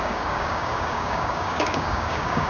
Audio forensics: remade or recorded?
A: remade